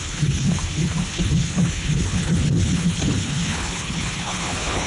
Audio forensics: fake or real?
fake